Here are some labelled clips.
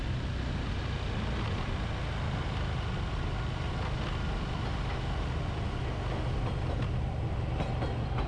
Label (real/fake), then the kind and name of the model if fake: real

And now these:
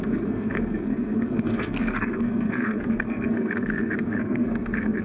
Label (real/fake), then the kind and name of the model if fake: fake, codec, SNAC